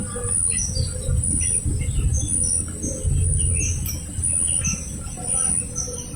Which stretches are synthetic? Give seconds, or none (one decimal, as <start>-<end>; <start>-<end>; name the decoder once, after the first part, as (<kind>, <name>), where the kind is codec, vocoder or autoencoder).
none